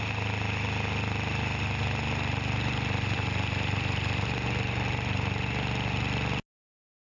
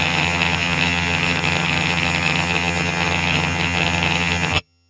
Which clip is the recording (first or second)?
first